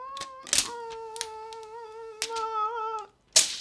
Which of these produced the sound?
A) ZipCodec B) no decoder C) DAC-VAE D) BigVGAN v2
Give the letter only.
B